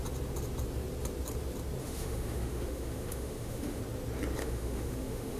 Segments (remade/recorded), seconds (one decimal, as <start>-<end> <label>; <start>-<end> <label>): 0.0-1.8 recorded; 1.8-3.8 remade; 3.8-4.4 recorded; 4.4-5.4 remade